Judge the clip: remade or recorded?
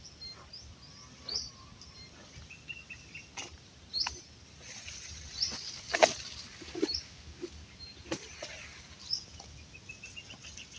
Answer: recorded